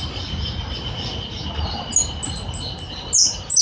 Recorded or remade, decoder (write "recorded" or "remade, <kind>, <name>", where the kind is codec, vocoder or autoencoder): recorded